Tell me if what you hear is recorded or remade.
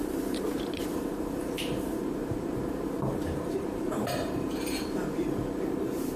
remade